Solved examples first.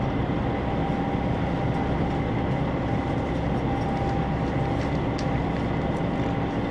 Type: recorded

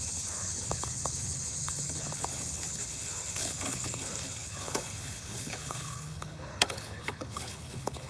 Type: remade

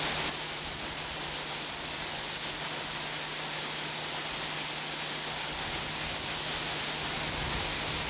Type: recorded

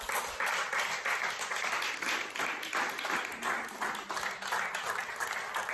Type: recorded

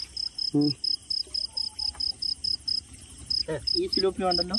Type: recorded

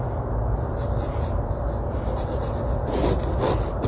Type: recorded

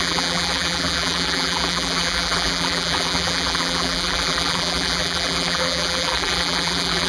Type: remade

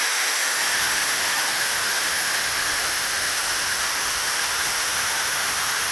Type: remade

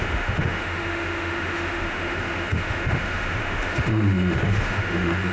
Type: remade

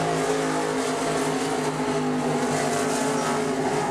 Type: recorded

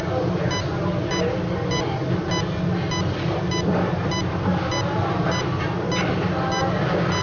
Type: recorded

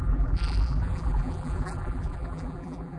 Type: remade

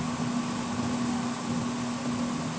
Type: recorded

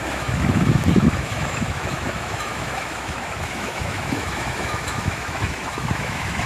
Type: remade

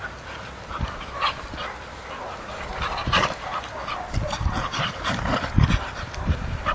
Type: recorded